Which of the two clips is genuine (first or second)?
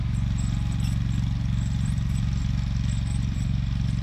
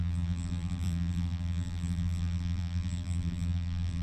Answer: first